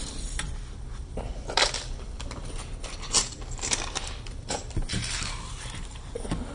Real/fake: fake